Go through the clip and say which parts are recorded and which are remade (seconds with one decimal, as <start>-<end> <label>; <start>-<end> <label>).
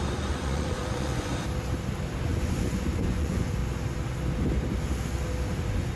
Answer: 0.0-1.3 remade; 1.3-2.2 recorded; 2.2-3.6 remade; 3.6-5.6 recorded; 5.6-6.0 remade